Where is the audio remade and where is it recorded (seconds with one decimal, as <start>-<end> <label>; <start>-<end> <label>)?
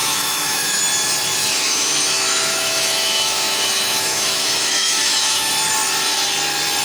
0.0-0.8 remade; 0.8-1.4 recorded; 1.4-5.5 remade; 5.5-6.8 recorded